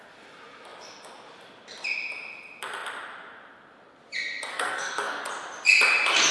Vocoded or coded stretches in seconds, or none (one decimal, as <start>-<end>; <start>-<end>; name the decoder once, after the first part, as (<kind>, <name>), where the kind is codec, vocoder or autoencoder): 4.5-5.2 (codec, SNAC)